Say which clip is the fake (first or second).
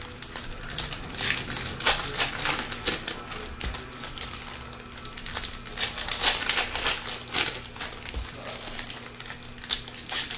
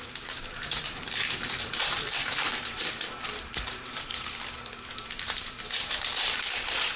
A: second